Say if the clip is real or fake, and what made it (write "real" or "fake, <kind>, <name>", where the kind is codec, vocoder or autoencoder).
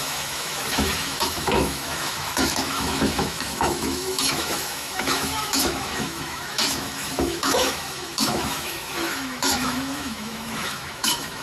fake, autoencoder, DAC-VAE